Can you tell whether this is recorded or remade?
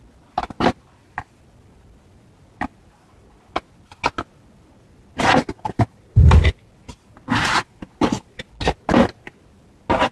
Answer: recorded